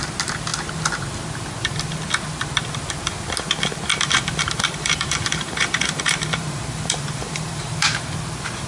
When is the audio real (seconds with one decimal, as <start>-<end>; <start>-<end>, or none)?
0.0-3.9; 8.0-8.7